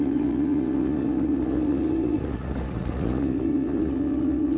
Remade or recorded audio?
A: remade